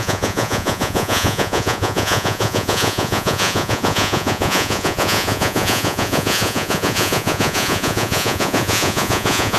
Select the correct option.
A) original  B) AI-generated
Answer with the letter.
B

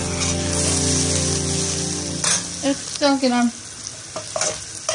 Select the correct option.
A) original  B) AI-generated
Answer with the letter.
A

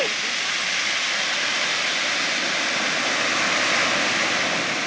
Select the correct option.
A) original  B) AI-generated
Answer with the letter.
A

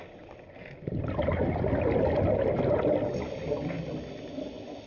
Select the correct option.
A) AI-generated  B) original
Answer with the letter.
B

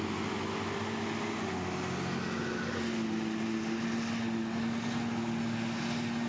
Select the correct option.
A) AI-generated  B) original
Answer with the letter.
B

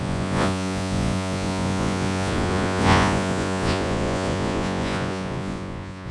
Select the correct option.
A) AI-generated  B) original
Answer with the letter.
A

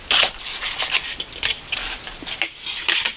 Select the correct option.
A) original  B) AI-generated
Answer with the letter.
A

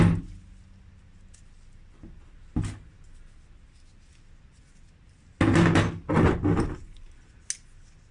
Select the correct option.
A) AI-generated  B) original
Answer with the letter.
B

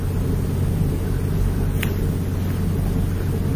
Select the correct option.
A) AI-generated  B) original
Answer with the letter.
B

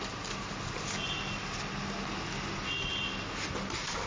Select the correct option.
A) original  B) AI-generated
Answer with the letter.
A